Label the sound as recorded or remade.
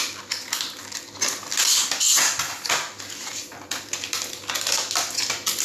recorded